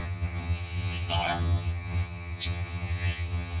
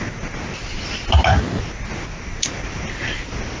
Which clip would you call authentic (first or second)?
second